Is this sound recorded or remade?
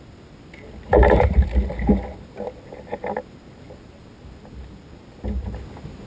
recorded